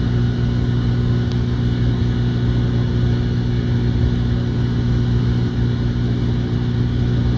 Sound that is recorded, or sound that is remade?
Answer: recorded